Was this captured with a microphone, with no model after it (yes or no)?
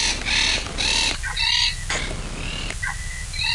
yes